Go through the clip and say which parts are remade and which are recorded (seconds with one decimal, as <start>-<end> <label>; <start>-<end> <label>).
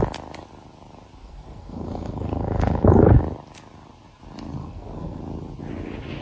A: 0.0-1.2 recorded; 1.2-3.2 remade; 3.2-4.6 recorded; 4.6-5.2 remade; 5.2-6.2 recorded